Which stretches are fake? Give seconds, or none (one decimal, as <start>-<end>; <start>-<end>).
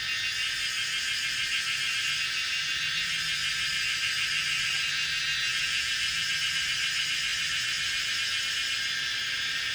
5.5-6.3